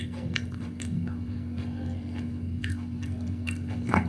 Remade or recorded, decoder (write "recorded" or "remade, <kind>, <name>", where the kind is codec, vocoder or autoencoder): remade, codec, SNAC